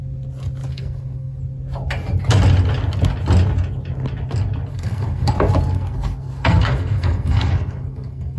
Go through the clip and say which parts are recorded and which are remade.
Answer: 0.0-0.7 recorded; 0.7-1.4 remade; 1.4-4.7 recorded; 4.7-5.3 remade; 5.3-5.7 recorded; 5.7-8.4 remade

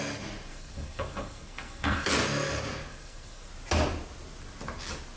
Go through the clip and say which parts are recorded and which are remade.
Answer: 0.0-0.5 recorded; 0.5-2.1 remade; 2.1-2.9 recorded; 2.9-3.5 remade; 3.5-5.2 recorded

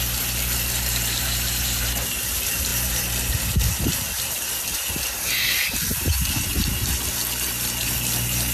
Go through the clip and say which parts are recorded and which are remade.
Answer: 0.0-8.5 recorded

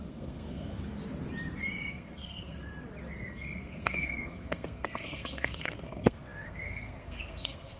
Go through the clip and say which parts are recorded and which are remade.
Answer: 0.0-0.7 remade; 0.7-1.9 recorded; 1.9-2.6 remade; 2.6-3.2 recorded; 3.2-7.8 remade

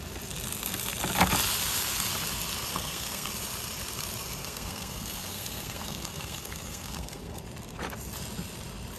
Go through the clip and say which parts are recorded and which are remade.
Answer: 0.0-2.7 recorded; 2.7-3.3 remade; 3.3-4.4 recorded; 4.4-7.4 remade; 7.4-9.0 recorded

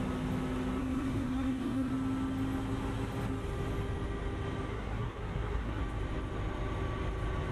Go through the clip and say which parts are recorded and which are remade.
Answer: 0.0-0.8 recorded; 0.8-1.9 remade; 1.9-4.7 recorded; 4.7-5.8 remade; 5.8-7.5 recorded